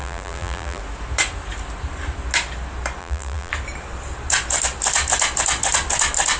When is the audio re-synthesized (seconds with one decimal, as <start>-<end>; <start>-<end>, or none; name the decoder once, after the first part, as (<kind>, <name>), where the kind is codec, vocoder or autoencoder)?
0.0-0.8 (vocoder, BigVGAN v2); 3.0-3.5